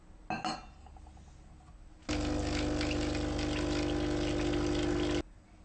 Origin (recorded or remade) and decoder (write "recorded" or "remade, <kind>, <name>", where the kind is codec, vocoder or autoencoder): recorded